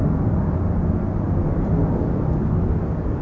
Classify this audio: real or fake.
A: real